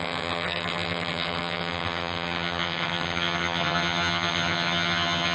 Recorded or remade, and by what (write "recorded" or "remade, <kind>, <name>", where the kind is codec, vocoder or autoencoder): remade, vocoder, HiFi-GAN